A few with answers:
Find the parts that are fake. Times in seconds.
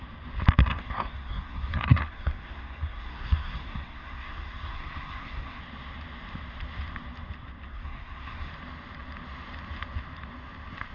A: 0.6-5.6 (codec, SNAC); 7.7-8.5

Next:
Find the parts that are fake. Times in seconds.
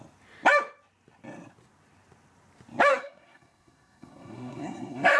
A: 2.9-5.2 (codec, SNAC)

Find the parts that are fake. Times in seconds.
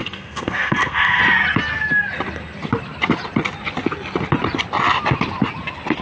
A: 0.0-1.2 (codec, SNAC)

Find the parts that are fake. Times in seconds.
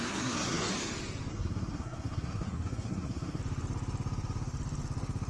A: 0.0-0.7 (codec, SNAC); 1.3-3.4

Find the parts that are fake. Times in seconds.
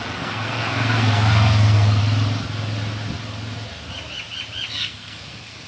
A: 0.0-2.0 (codec, SNAC); 4.7-5.7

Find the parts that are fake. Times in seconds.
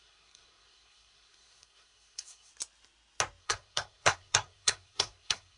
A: 0.0-2.5 (codec, SNAC); 3.4-5.6